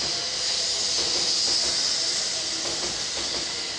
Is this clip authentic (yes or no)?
yes